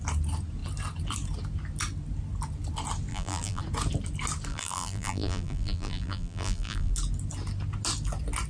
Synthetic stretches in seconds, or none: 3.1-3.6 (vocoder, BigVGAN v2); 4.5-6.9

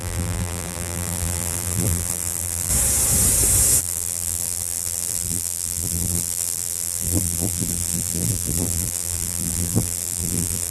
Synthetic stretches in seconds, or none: 0.0-2.7 (vocoder, BigVGAN v2); 3.8-10.7

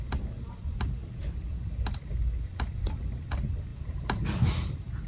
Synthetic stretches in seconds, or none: 1.0-2.1 (vocoder, BigVGAN v2); 3.7-5.1

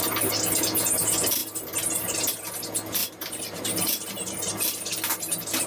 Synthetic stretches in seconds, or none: 3.0-4.5 (vocoder, BigVGAN v2)

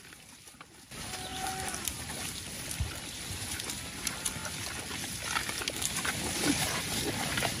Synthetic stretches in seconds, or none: 0.0-1.3 (vocoder, BigVGAN v2); 2.0-4.4; 6.2-7.6

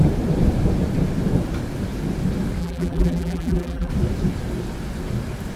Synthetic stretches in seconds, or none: 2.6-3.9 (vocoder, BigVGAN v2)